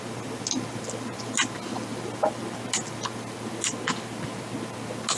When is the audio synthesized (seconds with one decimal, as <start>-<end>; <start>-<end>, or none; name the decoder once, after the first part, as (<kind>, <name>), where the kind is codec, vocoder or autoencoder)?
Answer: none